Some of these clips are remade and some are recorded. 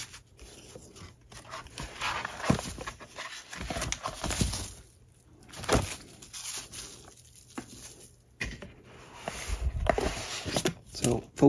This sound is recorded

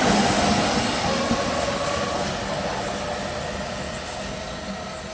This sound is recorded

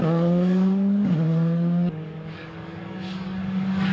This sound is remade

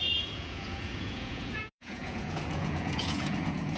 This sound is remade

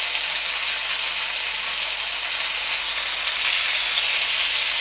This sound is recorded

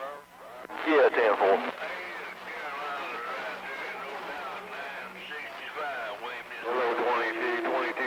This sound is remade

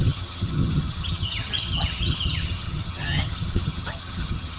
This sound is remade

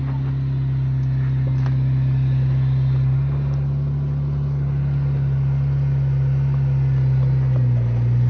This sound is recorded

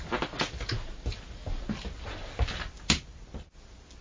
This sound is recorded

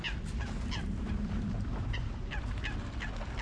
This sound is recorded